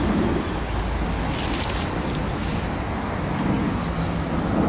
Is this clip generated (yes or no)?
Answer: no